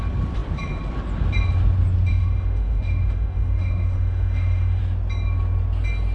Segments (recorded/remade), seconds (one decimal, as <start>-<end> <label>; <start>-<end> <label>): 0.0-2.1 recorded; 2.1-4.8 remade; 4.8-6.1 recorded

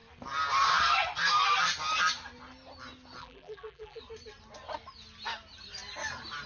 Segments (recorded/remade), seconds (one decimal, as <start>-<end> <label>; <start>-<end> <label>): 0.0-3.2 recorded; 3.2-4.0 remade; 4.0-6.5 recorded

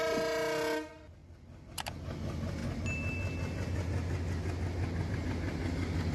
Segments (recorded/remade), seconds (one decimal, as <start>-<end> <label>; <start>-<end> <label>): 0.0-6.1 recorded

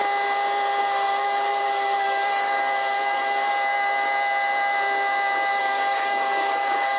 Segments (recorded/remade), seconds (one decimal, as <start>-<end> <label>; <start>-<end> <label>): 0.0-0.8 recorded; 0.8-3.5 remade; 3.5-5.6 recorded; 5.6-7.0 remade

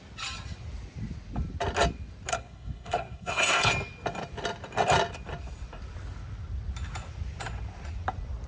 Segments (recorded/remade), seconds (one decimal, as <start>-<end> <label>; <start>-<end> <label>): 0.0-2.3 recorded; 2.3-3.7 remade; 3.7-8.5 recorded